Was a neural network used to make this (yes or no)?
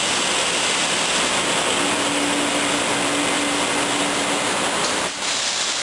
no